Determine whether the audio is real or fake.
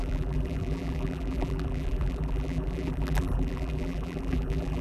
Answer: fake